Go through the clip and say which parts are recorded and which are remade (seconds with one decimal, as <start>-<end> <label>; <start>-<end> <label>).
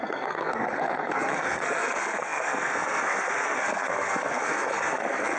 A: 0.0-5.4 remade